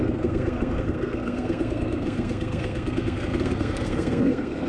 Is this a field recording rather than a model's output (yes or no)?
no